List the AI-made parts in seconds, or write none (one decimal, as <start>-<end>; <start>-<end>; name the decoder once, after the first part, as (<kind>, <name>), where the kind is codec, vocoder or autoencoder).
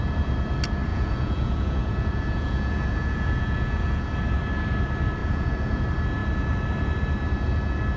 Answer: 0.9-4.0 (vocoder, Vocos); 5.2-5.8